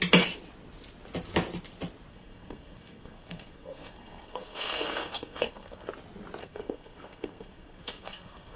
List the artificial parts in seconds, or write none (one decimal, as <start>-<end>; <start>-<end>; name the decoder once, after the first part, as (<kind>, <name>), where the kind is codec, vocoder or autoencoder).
2.1-5.9 (codec, SNAC); 6.4-8.6